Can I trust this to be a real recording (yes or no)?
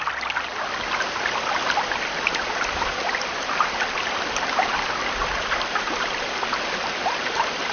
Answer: yes